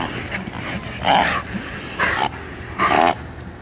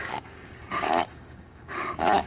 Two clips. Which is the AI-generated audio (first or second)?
second